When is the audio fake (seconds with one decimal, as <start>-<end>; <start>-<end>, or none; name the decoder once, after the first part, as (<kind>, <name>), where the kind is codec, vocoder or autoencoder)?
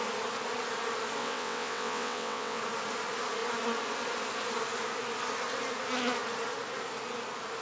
1.2-2.6 (vocoder, WaveNeXt)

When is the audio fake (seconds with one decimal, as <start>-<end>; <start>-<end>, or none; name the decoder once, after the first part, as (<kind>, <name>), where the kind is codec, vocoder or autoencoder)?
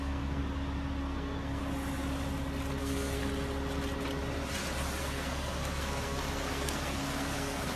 0.0-0.4 (codec, SNAC); 1.0-1.6; 2.8-3.2; 5.0-7.8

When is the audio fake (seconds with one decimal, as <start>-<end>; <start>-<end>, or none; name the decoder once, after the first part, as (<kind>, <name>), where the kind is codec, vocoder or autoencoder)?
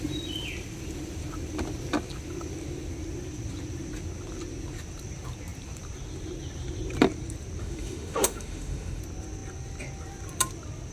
7.6-9.0 (autoencoder, DAC-VAE)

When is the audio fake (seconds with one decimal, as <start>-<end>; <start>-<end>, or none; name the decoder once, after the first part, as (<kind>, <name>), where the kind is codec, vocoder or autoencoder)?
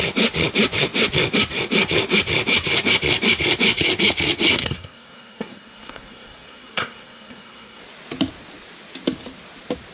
4.5-7.8 (codec, SNAC)